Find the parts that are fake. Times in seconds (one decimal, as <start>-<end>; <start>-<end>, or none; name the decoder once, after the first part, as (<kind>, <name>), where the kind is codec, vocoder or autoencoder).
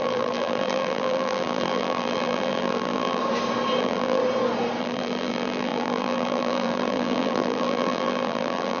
0.0-3.2 (vocoder, BigVGAN v2); 3.8-4.2; 4.8-8.8